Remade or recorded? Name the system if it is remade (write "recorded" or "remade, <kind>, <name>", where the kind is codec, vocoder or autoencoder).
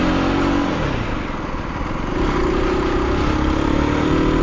recorded